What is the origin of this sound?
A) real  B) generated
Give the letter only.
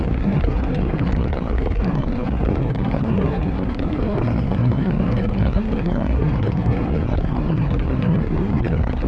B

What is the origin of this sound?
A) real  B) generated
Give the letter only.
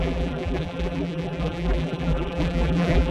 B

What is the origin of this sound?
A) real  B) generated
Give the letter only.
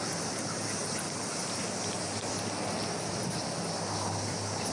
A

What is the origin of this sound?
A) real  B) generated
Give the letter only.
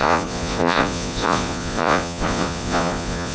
B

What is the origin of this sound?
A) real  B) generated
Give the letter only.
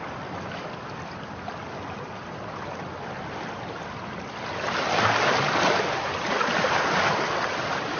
A